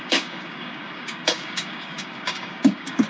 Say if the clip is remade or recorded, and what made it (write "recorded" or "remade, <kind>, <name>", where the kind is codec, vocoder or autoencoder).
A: remade, codec, DAC